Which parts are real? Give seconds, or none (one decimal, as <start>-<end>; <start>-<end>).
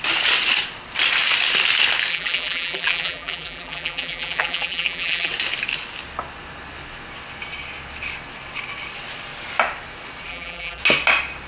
0.0-2.1; 5.3-10.3; 10.8-11.5